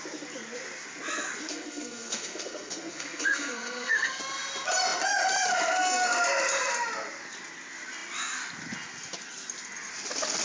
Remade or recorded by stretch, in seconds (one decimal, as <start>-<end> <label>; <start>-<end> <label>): 0.0-1.5 recorded; 1.5-4.2 remade; 4.2-10.4 recorded